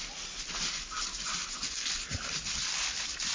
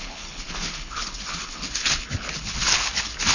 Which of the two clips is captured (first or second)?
first